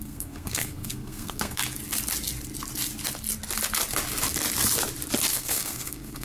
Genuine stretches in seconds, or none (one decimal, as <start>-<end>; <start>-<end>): 1.6-5.3